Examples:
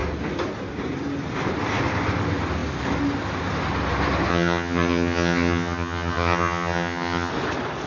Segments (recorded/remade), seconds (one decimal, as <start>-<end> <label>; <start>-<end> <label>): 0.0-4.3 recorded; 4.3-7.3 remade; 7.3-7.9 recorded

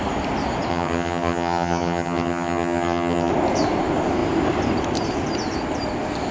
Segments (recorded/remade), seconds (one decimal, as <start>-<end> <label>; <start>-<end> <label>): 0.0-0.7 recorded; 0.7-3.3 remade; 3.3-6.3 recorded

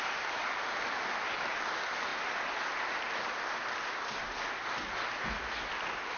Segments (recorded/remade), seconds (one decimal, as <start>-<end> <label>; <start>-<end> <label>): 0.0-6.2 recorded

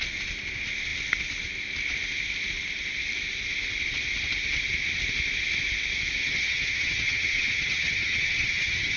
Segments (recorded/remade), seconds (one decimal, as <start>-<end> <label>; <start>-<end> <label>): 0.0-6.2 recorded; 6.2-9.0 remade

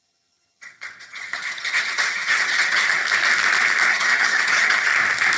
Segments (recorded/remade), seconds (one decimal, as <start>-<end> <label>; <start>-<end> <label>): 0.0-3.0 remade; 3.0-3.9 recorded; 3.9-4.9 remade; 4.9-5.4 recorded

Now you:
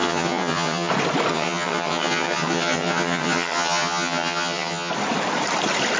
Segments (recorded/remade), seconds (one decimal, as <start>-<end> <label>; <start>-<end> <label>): 0.0-0.9 remade; 0.9-1.3 recorded; 1.3-4.9 remade; 4.9-6.0 recorded

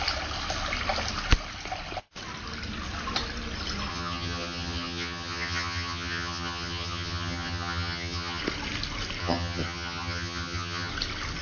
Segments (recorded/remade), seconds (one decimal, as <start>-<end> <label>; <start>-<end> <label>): 0.0-3.9 recorded; 3.9-8.4 remade; 8.4-9.2 recorded; 9.2-10.9 remade; 10.9-11.4 recorded

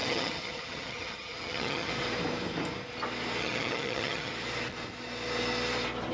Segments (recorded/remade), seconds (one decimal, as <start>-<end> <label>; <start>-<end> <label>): 0.0-1.9 remade; 1.9-3.4 recorded; 3.4-4.3 remade; 4.3-6.1 recorded